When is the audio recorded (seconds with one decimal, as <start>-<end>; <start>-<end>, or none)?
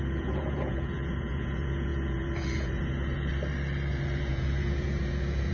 3.3-3.9